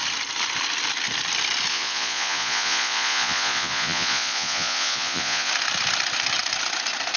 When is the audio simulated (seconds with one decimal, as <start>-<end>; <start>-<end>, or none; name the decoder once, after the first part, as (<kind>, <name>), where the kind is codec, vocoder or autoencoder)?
1.7-5.5 (vocoder, Vocos)